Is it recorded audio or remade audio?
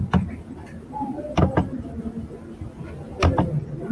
recorded